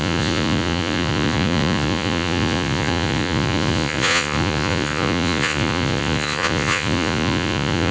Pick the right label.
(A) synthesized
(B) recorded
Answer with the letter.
A